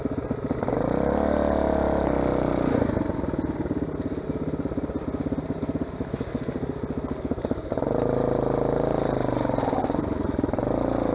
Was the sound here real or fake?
real